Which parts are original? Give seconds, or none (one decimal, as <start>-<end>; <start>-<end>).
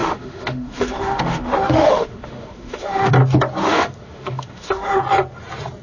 3.1-3.6; 5.0-5.8